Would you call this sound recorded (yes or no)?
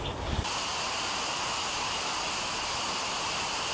yes